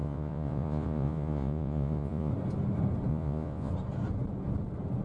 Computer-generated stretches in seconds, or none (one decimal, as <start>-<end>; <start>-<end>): 0.0-2.3; 3.1-3.7